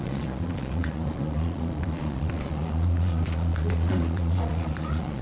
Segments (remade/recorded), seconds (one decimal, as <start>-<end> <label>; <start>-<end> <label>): 0.0-5.2 remade